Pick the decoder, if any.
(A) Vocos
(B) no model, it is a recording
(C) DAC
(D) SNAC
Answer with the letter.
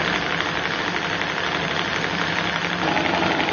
B